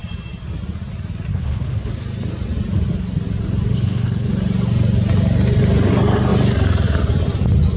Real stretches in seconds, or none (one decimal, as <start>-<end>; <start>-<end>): 0.0-1.3; 1.9-3.7; 4.3-7.8